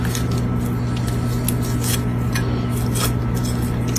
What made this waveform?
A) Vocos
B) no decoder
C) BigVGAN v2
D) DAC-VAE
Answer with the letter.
B